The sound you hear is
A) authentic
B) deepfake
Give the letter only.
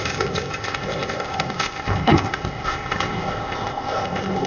B